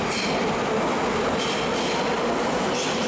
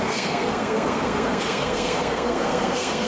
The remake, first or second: second